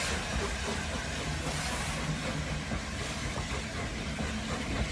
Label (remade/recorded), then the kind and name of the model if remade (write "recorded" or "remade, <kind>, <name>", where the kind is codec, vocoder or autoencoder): recorded